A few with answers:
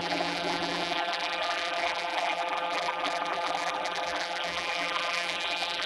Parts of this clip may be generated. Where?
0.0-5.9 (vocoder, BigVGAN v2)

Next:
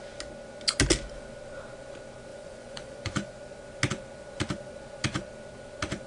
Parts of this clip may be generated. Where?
2.3-3.4 (vocoder, Vocos)

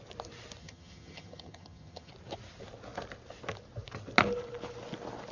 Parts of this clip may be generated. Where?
0.6-2.1 (vocoder, HiFi-GAN)

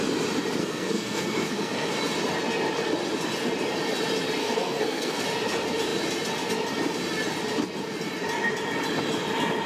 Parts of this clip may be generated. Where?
0.6-1.9 (codec, SNAC); 4.4-5.2

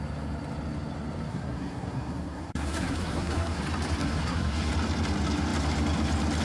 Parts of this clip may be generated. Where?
1.3-3.6 (codec, SNAC); 4.0-4.7

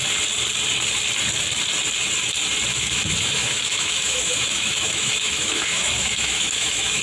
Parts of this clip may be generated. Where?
2.7-7.0 (autoencoder, DAC-VAE)

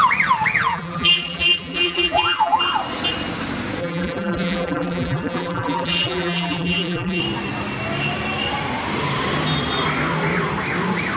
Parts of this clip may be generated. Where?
0.7-2.6 (vocoder, BigVGAN v2); 3.8-7.2